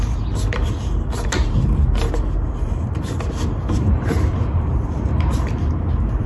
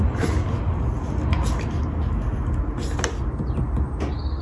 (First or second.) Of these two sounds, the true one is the second